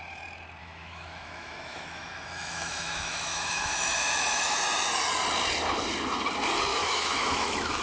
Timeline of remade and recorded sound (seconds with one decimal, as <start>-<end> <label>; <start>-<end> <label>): 0.0-0.6 recorded; 0.6-4.6 remade; 4.6-6.7 recorded; 6.7-7.8 remade